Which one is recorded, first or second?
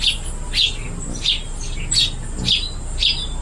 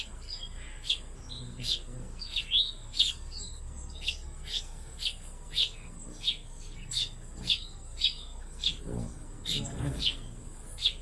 first